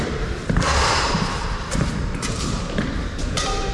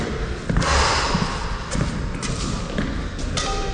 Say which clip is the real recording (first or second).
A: second